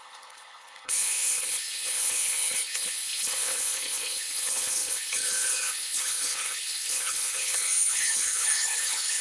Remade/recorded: remade